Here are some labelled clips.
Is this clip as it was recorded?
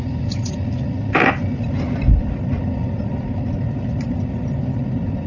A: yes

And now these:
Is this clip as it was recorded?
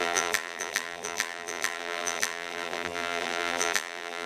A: no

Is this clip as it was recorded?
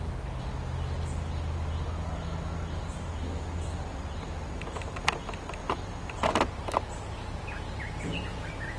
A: yes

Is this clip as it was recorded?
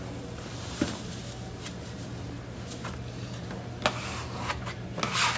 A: yes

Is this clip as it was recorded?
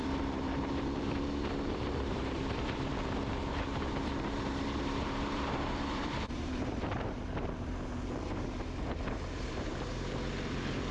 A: no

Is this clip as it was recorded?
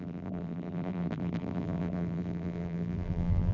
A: no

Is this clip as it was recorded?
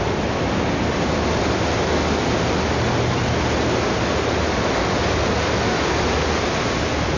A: yes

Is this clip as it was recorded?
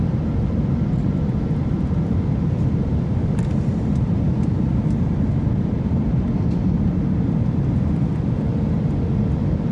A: no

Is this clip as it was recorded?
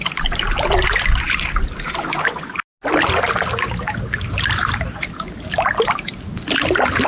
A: yes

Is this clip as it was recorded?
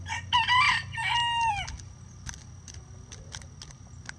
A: yes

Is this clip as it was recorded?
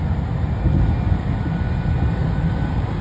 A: yes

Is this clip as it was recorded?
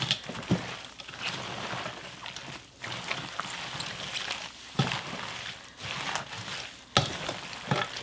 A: yes